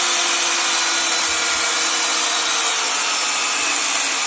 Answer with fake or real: real